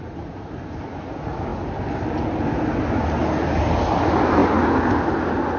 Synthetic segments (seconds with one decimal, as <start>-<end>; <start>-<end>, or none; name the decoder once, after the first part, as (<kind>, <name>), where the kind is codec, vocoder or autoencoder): none